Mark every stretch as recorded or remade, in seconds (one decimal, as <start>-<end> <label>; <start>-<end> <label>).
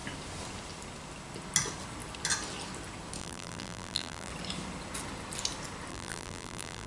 0.0-3.2 recorded; 3.2-4.3 remade; 4.3-5.9 recorded; 5.9-6.9 remade